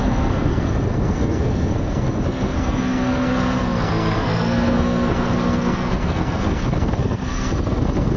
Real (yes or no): no